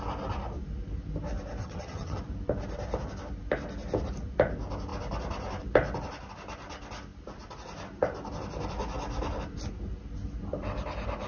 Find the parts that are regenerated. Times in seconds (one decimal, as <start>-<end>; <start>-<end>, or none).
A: 1.6-2.2